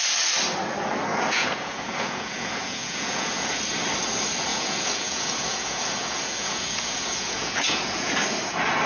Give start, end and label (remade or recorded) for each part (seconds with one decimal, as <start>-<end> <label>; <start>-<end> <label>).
0.0-1.1 recorded; 1.1-3.6 remade; 3.6-4.5 recorded; 4.5-8.1 remade; 8.1-8.9 recorded